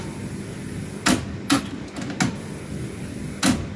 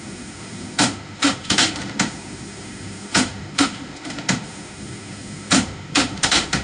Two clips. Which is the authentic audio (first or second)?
first